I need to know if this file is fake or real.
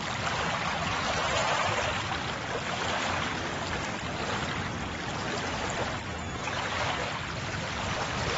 real